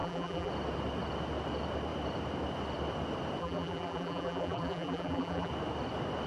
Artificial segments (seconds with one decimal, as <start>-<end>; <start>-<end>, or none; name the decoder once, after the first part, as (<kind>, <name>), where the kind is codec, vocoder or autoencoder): 0.0-0.5 (vocoder, BigVGAN v2); 3.4-5.5